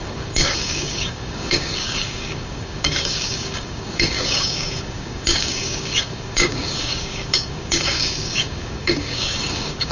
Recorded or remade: remade